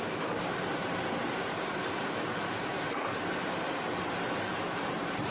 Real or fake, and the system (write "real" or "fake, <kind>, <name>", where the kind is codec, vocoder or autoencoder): fake, vocoder, BigVGAN v2